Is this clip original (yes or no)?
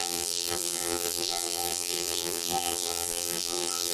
no